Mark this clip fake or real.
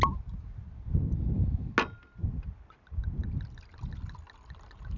real